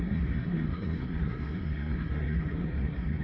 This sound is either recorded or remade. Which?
remade